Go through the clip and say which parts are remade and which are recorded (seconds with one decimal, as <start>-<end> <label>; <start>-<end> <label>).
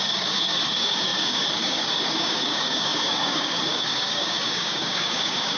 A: 0.0-5.6 remade